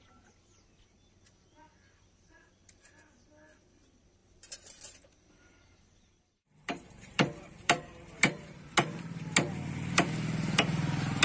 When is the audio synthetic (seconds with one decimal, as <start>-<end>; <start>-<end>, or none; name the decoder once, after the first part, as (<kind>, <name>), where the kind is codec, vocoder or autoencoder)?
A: 4.2-8.2 (vocoder, BigVGAN v2)